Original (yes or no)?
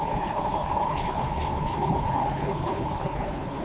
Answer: no